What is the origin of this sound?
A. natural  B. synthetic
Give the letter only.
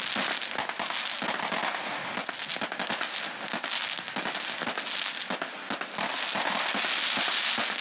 A